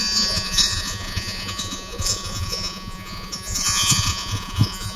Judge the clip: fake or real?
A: fake